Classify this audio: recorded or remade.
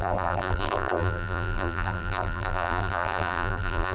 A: remade